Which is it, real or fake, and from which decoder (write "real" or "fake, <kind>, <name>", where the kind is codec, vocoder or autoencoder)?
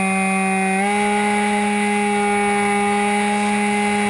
real